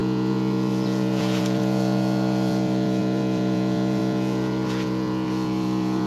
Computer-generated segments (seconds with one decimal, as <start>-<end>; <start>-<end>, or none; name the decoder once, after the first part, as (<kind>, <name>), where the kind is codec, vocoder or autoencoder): 0.0-6.1 (vocoder, Vocos)